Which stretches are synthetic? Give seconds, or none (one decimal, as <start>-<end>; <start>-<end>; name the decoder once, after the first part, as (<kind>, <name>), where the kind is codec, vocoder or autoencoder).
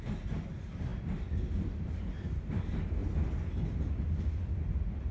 none